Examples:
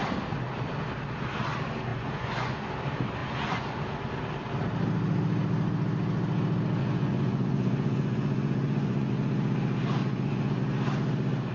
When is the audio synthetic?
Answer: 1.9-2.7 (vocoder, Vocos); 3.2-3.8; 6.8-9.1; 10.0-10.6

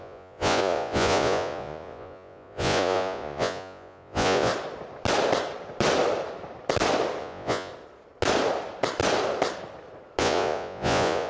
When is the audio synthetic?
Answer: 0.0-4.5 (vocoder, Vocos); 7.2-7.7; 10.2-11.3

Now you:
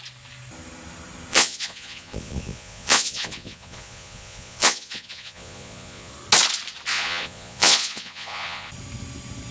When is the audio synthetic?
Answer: 1.3-6.1 (vocoder, Vocos); 6.9-8.7

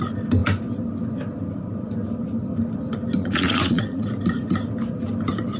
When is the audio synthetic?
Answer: 3.2-4.1 (vocoder, Vocos)